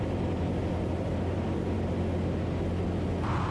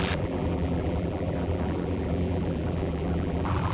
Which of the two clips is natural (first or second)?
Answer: first